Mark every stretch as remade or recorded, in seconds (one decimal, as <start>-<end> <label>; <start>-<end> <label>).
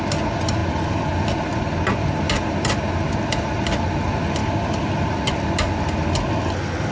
0.0-6.9 recorded